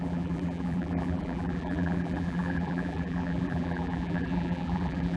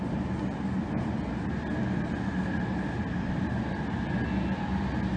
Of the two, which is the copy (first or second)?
first